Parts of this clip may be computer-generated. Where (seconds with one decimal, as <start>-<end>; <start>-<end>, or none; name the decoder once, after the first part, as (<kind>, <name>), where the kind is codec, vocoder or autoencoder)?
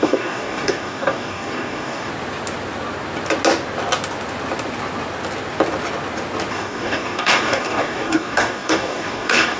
0.0-2.1 (codec, DAC); 6.5-9.6